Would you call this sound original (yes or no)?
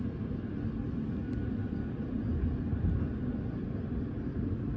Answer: yes